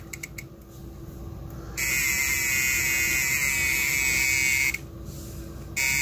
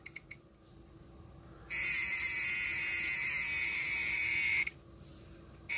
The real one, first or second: first